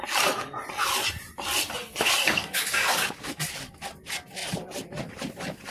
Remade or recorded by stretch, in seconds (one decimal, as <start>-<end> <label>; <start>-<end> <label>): 0.0-1.9 recorded; 1.9-3.8 remade; 3.8-5.7 recorded